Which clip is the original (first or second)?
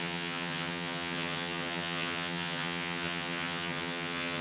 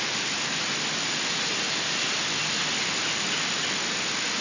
second